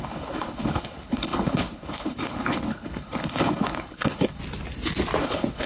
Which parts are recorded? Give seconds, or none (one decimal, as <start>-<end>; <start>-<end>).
4.4-5.2